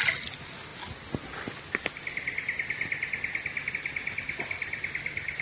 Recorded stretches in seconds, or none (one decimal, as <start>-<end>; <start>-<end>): 0.0-5.4